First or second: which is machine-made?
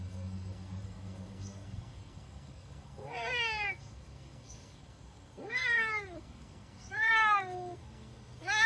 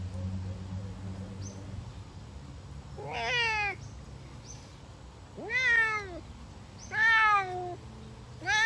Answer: first